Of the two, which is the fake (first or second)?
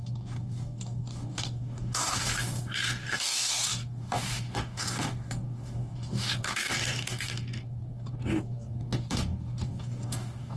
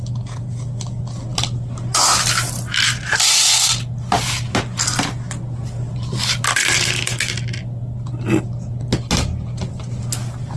first